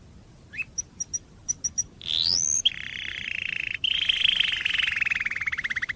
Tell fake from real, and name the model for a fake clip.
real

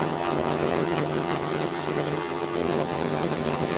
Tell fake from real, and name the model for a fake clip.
fake, vocoder, HiFi-GAN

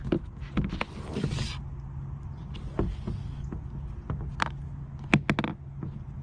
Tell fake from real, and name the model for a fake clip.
real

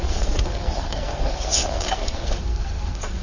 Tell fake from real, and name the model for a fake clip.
fake, codec, SNAC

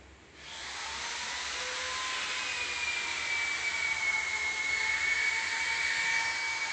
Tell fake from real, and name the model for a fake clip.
real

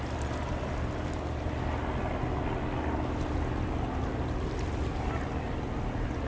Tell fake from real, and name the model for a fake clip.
real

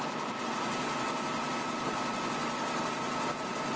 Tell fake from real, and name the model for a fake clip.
real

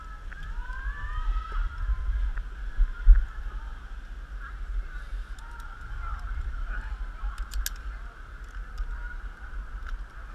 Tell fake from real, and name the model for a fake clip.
real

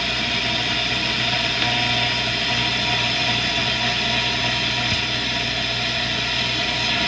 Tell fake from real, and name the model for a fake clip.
real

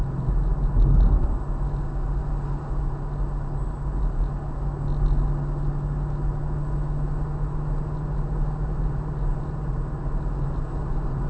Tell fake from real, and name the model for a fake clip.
real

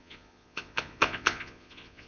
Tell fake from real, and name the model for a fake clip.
fake, vocoder, Vocos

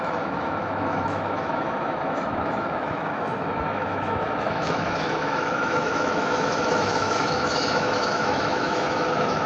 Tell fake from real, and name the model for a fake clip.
fake, autoencoder, DAC-VAE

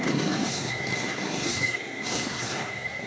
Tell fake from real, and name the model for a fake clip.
fake, codec, SNAC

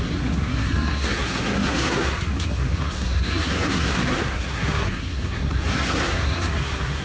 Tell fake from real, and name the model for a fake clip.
fake, codec, SNAC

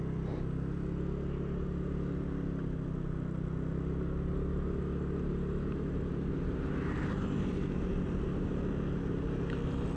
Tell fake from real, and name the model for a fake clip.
real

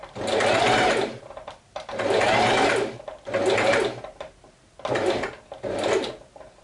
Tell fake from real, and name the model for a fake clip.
real